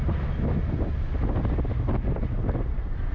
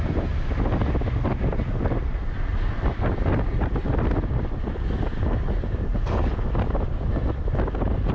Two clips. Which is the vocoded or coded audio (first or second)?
second